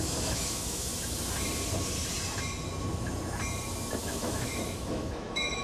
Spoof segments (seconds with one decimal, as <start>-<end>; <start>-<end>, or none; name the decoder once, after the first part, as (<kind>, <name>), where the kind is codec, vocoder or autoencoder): 0.0-0.9 (autoencoder, DAC-VAE); 4.0-5.6